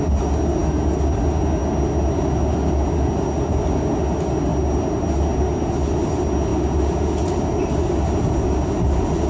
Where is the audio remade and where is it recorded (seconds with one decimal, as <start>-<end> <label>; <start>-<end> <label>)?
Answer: 0.0-9.3 recorded